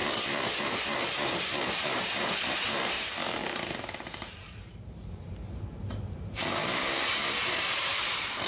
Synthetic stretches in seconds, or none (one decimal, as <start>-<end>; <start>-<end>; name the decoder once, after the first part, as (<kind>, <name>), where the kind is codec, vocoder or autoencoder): 0.6-8.5 (vocoder, BigVGAN v2)